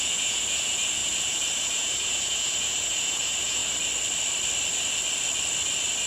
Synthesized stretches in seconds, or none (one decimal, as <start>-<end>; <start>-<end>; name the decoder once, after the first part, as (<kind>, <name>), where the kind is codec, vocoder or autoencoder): 0.0-3.6 (vocoder, Vocos)